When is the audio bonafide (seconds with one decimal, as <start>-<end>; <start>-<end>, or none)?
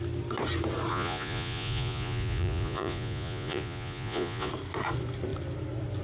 0.0-0.9; 4.5-6.0